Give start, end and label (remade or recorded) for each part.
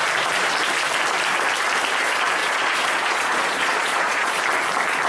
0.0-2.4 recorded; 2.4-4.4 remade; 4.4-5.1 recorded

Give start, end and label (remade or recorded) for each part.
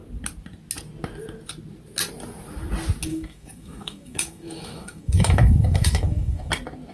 0.0-3.1 recorded; 3.1-6.5 remade; 6.5-6.9 recorded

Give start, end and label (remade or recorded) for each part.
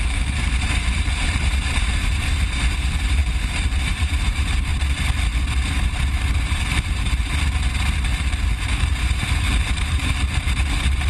0.0-4.7 remade; 4.7-5.5 recorded; 5.5-11.1 remade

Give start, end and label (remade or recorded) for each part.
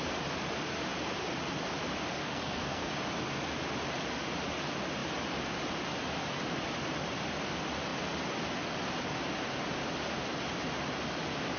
0.0-2.2 recorded; 2.2-2.9 remade; 2.9-11.6 recorded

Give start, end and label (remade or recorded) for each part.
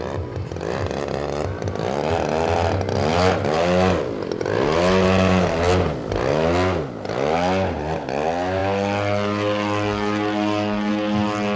0.0-11.6 recorded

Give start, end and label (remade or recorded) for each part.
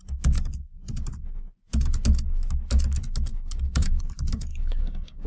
0.0-3.3 recorded; 3.3-4.0 remade; 4.0-4.5 recorded; 4.5-5.3 remade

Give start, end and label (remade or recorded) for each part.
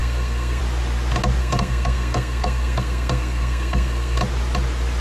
0.0-0.6 remade; 0.6-1.4 recorded; 1.4-4.2 remade; 4.2-5.0 recorded